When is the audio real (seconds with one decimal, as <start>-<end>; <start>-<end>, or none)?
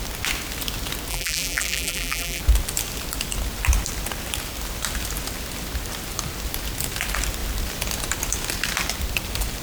0.0-1.1; 2.4-9.6